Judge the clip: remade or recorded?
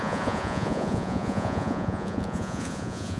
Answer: remade